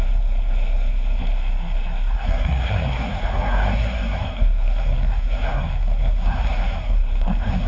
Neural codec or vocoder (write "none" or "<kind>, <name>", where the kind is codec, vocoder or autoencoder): codec, SNAC